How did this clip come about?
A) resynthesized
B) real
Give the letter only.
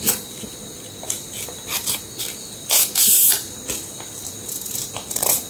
B